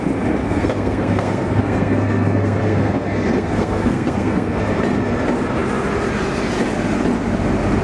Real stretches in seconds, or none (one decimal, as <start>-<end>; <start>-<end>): 0.0-0.4; 4.6-7.8